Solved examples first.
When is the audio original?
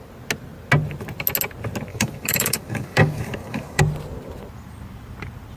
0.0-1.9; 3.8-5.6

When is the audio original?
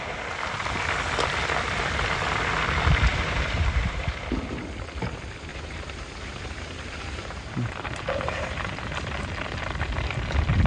0.0-3.1; 4.2-5.5; 9.3-10.7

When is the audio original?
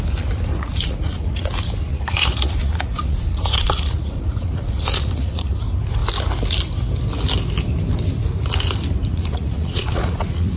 0.0-0.5; 1.5-1.9; 5.6-9.1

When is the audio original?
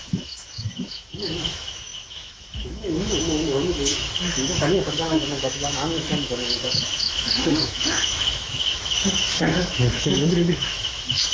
none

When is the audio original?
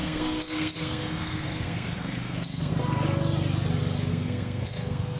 2.7-4.1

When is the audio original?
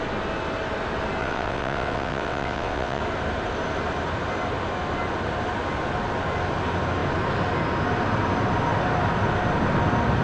0.0-1.2; 3.0-10.2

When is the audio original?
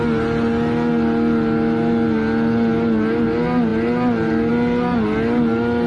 0.0-5.9